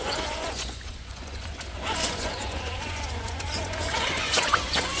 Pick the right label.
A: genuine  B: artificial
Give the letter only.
B